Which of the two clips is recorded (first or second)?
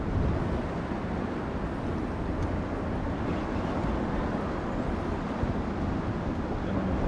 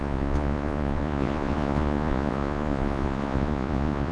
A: first